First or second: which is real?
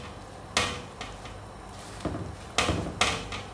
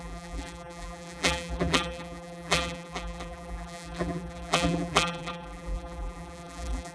first